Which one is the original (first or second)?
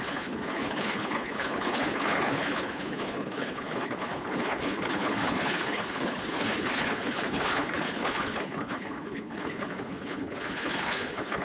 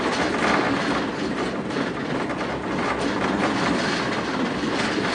second